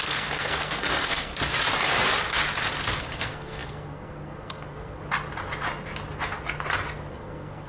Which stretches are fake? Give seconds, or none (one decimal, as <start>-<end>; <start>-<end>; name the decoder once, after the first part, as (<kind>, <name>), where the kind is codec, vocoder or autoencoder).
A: 0.0-1.3 (codec, SNAC); 3.0-5.0; 7.1-7.7